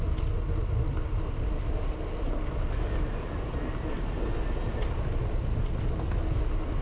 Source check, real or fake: real